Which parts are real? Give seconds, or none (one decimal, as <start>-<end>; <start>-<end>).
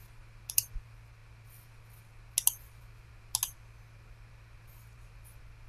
0.0-5.7